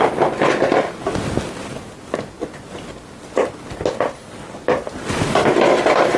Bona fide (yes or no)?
yes